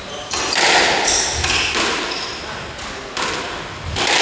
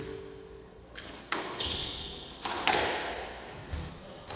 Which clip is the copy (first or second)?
second